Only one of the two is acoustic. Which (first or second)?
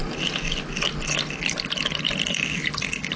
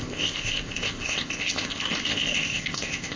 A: first